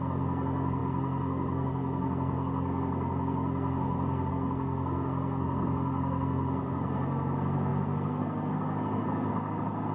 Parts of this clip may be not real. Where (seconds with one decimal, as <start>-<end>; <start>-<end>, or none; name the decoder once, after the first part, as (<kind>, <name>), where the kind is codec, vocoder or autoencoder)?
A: 0.0-9.9 (codec, SNAC)